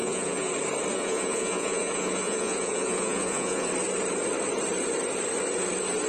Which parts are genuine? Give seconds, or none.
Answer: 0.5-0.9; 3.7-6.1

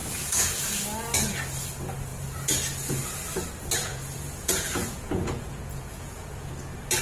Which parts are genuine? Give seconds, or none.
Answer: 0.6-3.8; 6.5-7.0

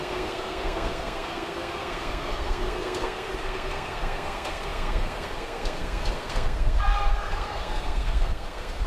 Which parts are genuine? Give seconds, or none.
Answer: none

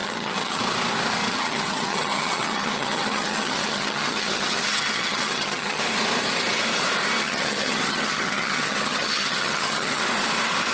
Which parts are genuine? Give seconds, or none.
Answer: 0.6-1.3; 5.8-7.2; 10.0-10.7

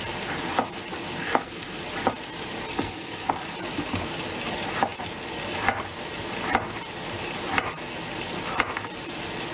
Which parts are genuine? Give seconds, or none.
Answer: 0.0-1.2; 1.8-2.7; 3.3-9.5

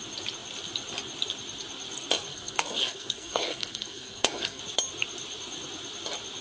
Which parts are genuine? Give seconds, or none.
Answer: 0.0-2.3; 4.6-6.4